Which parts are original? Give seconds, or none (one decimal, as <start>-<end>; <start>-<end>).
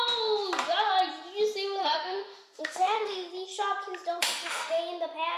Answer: 0.0-1.8; 3.3-4.2; 4.8-5.4